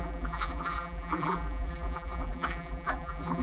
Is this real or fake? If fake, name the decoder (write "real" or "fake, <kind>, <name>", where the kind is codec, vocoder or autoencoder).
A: fake, vocoder, BigVGAN v2